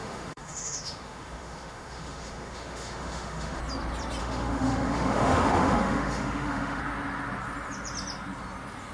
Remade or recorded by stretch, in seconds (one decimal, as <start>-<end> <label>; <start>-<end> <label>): 0.0-3.6 remade; 3.6-4.2 recorded; 4.2-6.8 remade; 6.8-8.9 recorded